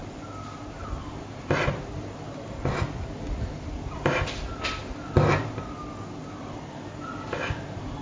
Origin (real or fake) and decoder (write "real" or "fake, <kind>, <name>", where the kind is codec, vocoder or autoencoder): real